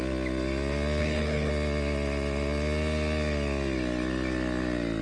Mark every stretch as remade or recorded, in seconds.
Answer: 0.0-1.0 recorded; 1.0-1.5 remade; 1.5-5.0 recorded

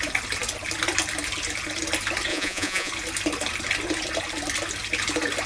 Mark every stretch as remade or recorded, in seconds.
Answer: 0.0-2.3 recorded; 2.3-2.9 remade; 2.9-5.5 recorded